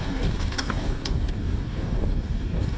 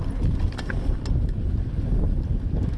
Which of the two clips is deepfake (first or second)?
first